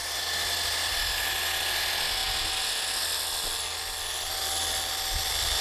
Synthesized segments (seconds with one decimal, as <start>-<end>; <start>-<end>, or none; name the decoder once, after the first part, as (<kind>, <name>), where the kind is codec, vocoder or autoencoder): none